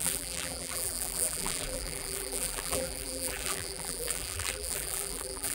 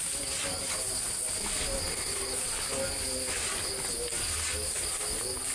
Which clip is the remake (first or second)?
first